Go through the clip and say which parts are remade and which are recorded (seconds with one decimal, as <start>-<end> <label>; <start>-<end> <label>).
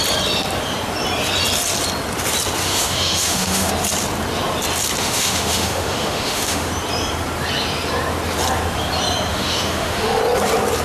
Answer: 0.0-2.6 recorded; 2.6-3.7 remade; 3.7-5.0 recorded; 5.0-6.7 remade; 6.7-9.3 recorded; 9.3-10.2 remade; 10.2-10.8 recorded